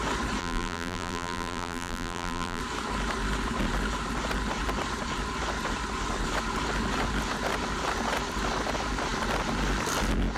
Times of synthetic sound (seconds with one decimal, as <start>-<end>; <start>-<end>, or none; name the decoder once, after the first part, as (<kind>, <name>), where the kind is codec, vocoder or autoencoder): 0.4-2.6 (vocoder, BigVGAN v2)